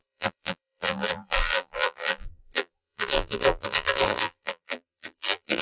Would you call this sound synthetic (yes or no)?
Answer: yes